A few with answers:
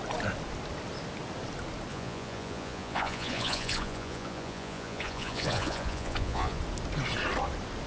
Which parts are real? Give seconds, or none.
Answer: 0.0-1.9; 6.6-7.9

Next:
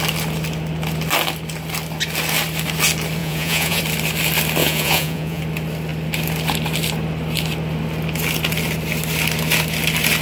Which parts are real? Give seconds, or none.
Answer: 0.0-3.2; 3.8-4.6; 5.4-10.2